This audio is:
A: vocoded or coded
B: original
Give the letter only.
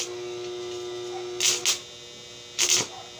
B